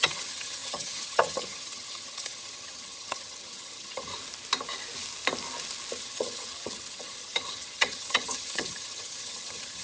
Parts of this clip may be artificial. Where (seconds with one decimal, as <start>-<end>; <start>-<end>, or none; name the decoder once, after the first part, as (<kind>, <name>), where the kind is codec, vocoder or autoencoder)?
0.0-4.1 (vocoder, HiFi-GAN); 6.0-9.8